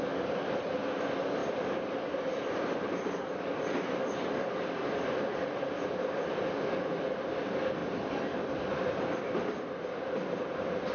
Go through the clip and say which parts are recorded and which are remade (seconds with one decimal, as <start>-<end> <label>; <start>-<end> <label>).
0.0-1.4 recorded; 1.4-6.5 remade; 6.5-10.9 recorded